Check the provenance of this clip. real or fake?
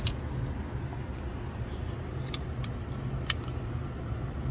real